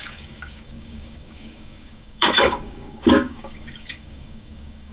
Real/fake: fake